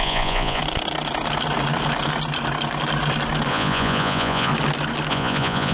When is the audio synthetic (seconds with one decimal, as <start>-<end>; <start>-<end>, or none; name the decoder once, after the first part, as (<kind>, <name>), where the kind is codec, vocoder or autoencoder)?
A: 0.0-0.6 (vocoder, Vocos); 3.5-4.5; 5.1-5.7